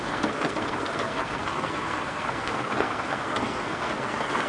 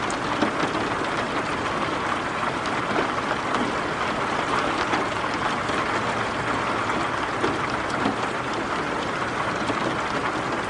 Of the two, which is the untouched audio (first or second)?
second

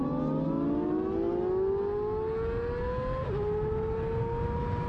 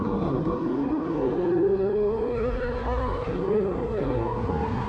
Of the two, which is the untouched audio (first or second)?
first